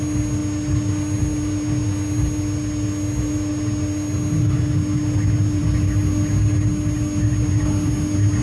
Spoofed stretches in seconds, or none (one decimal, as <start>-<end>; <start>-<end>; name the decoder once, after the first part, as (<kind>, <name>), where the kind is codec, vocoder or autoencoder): none